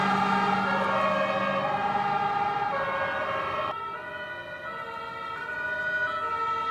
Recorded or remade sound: recorded